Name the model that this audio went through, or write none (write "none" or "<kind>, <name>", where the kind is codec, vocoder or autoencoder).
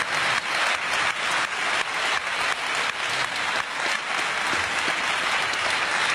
none